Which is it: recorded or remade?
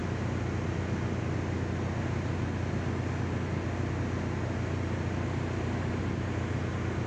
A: recorded